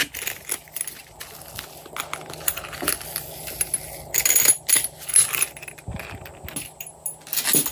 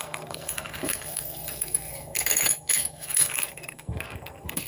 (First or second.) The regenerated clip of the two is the second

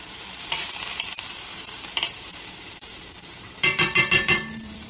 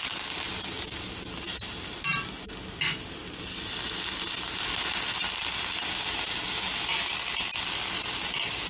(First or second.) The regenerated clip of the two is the first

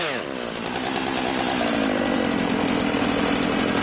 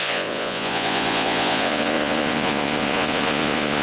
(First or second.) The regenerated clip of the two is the second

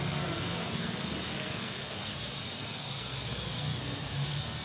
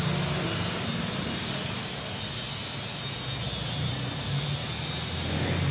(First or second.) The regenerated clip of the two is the first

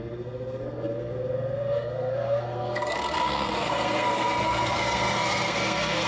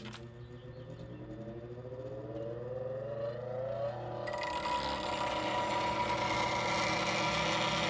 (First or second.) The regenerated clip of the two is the first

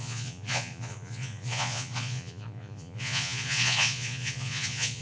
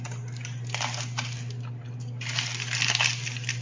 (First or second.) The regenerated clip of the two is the first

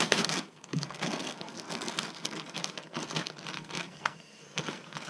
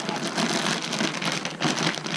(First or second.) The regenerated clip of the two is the first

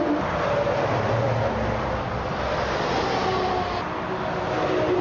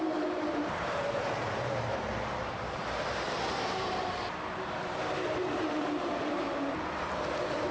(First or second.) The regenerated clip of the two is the second